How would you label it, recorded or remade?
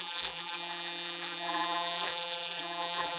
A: remade